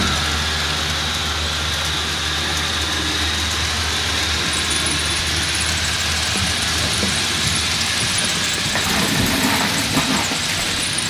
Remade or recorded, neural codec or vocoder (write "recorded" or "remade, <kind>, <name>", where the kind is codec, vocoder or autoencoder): recorded